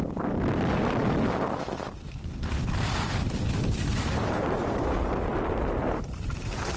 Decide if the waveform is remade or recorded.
remade